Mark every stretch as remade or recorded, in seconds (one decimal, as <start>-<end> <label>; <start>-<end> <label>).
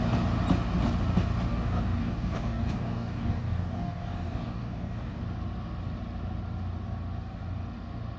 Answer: 0.0-1.5 recorded; 1.5-5.2 remade; 5.2-8.2 recorded